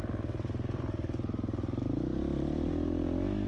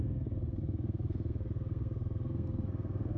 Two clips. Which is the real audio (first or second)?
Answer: first